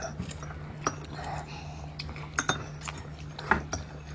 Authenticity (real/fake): real